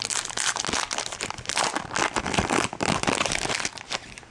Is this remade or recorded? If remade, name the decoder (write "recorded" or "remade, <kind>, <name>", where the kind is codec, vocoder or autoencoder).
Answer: recorded